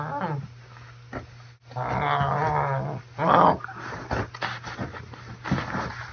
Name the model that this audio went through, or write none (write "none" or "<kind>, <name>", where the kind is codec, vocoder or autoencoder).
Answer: none